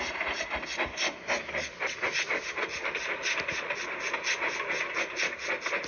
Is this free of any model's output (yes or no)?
yes